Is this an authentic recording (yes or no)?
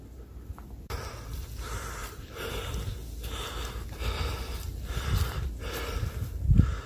yes